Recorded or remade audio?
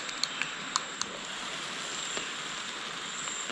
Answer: recorded